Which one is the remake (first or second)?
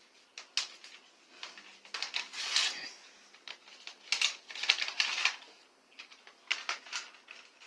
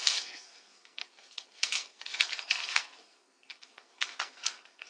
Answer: second